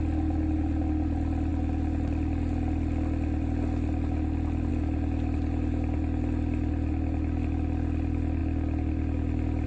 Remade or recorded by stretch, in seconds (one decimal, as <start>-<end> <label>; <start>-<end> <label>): 0.0-9.7 recorded